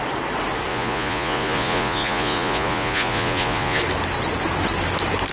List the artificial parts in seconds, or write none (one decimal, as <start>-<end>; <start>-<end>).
0.7-3.8